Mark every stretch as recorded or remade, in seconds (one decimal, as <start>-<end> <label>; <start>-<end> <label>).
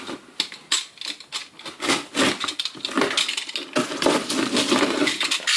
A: 0.0-5.6 recorded